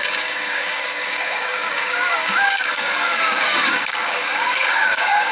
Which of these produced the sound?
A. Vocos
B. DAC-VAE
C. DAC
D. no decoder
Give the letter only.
C